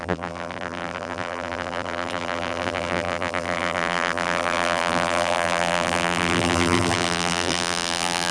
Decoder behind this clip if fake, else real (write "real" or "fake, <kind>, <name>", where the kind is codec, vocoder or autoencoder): fake, vocoder, BigVGAN v2